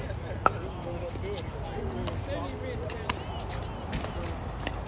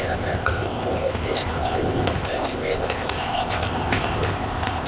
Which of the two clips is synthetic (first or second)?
second